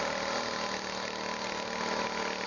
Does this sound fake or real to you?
real